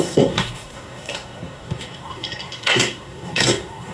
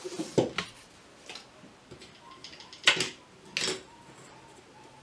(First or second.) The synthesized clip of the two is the first